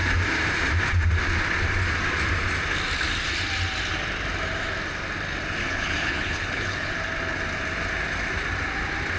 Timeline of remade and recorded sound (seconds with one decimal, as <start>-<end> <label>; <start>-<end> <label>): 0.0-5.6 recorded; 5.6-6.9 remade; 6.9-9.2 recorded